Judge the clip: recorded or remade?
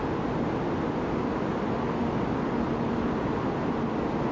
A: recorded